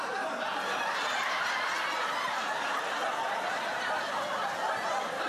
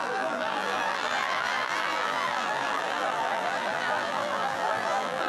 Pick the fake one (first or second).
second